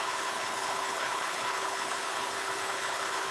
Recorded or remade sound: remade